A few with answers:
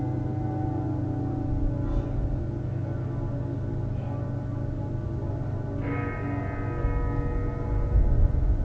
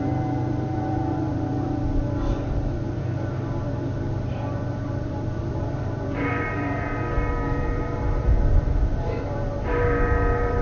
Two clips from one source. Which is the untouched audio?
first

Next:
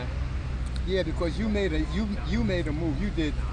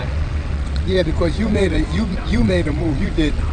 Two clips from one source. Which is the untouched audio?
first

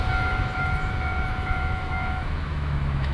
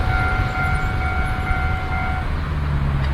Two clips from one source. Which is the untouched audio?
second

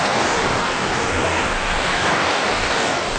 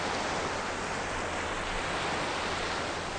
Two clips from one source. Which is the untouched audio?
second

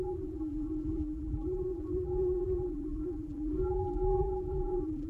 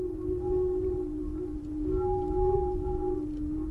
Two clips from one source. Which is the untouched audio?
second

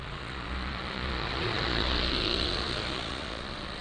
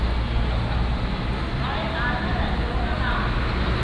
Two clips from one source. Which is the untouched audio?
second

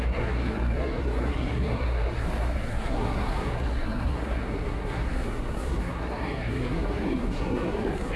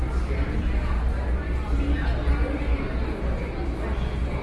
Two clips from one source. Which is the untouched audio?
second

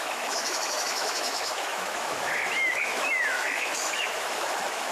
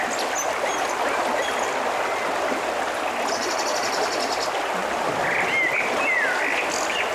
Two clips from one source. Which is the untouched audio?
second